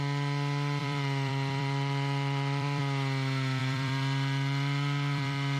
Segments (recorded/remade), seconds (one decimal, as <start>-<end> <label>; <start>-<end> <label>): 0.0-0.8 recorded; 0.8-2.8 remade; 2.8-3.6 recorded; 3.6-5.6 remade